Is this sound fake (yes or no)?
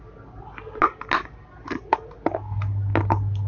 no